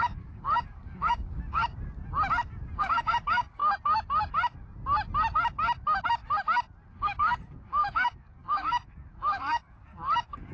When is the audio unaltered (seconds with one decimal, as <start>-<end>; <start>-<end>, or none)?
1.6-2.8; 3.6-6.9